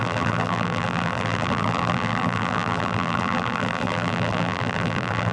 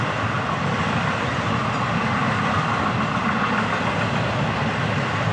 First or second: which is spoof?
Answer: first